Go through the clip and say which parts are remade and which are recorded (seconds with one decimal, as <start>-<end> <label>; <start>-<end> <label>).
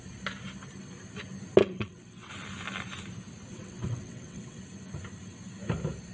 0.0-1.6 recorded; 1.6-2.3 remade; 2.3-3.5 recorded; 3.5-4.6 remade; 4.6-6.1 recorded